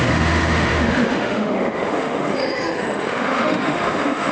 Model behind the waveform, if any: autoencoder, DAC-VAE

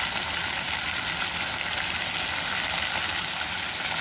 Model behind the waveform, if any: none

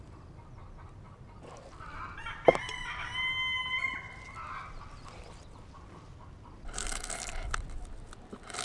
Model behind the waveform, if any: none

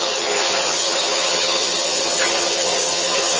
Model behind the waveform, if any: vocoder, HiFi-GAN